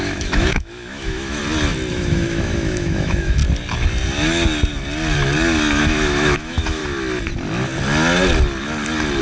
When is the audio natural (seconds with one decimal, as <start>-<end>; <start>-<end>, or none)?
1.4-1.9; 3.4-5.8; 6.8-9.2